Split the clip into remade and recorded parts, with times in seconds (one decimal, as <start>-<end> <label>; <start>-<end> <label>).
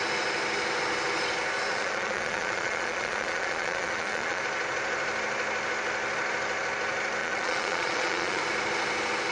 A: 0.0-1.7 recorded; 1.7-4.4 remade; 4.4-7.2 recorded; 7.2-8.4 remade; 8.4-9.3 recorded